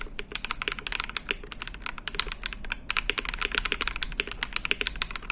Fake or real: real